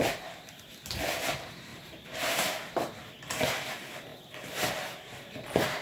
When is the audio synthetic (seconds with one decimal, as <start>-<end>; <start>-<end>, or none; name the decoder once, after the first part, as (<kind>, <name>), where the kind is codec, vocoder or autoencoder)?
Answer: 1.7-2.7 (vocoder, BigVGAN v2)